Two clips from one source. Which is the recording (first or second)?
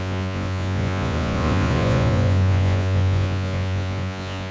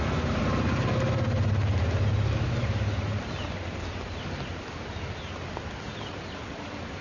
second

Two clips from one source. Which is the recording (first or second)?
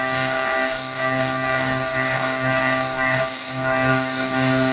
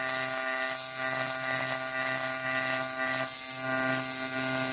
second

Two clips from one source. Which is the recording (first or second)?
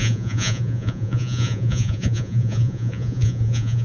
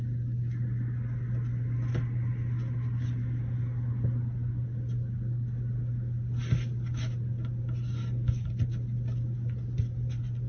second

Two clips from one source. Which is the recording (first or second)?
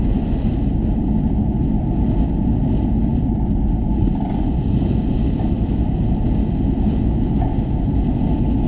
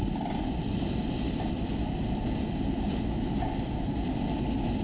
first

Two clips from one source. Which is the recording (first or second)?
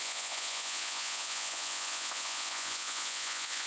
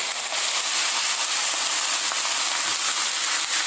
second